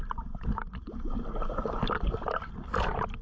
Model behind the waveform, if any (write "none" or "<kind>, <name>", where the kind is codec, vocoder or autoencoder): none